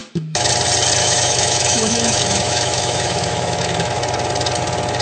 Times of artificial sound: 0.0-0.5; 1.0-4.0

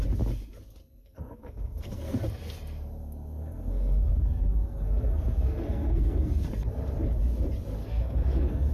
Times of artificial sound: 1.0-2.2; 3.0-6.7; 7.8-8.7

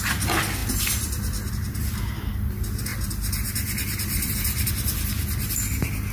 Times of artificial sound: 0.6-1.5; 2.9-4.7

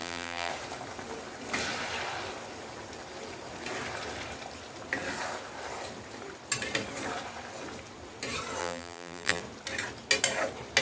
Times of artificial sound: 0.0-0.5; 8.6-9.4

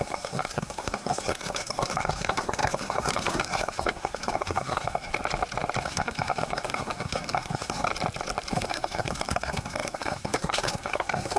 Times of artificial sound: 0.0-5.1; 5.8-7.9; 8.5-11.4